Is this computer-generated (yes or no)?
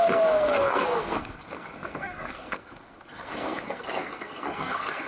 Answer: yes